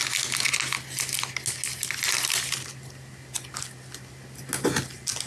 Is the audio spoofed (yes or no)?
no